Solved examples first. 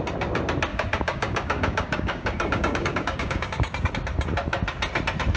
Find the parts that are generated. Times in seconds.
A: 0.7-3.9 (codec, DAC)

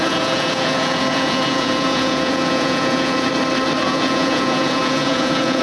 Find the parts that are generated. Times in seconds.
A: 0.0-3.3 (vocoder, Vocos); 3.8-5.6